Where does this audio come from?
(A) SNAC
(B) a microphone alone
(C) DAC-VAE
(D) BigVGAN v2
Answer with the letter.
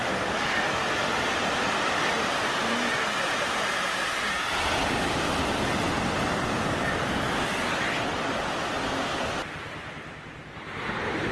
B